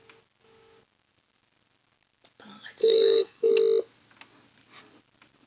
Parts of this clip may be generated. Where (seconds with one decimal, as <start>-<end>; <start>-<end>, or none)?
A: 2.8-3.5